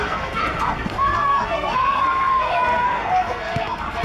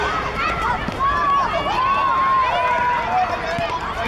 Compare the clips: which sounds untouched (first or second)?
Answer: second